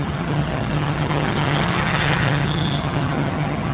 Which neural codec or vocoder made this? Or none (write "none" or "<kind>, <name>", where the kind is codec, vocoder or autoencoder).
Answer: vocoder, HiFi-GAN